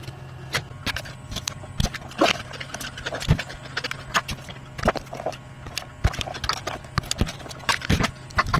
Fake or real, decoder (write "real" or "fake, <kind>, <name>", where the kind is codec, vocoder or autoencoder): real